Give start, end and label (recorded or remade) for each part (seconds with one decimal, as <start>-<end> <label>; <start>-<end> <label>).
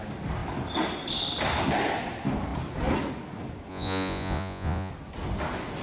0.0-3.7 recorded; 3.7-4.9 remade; 4.9-5.8 recorded